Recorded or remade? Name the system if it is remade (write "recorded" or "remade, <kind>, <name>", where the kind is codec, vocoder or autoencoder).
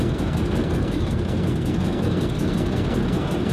remade, codec, SNAC